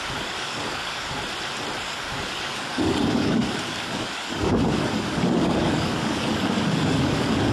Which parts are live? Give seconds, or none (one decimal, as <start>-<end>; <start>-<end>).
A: 1.2-1.8

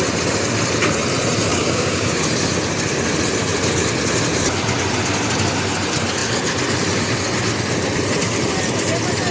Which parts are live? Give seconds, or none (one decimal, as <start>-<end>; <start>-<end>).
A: 0.0-1.5; 2.2-9.3

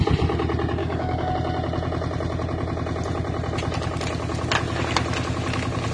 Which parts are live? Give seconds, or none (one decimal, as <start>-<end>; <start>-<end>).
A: 0.0-0.8; 1.3-5.9